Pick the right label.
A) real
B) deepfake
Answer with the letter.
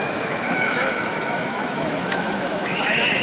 B